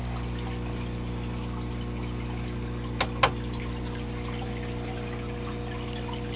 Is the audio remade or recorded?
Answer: recorded